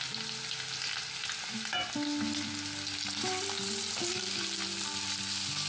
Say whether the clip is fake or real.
real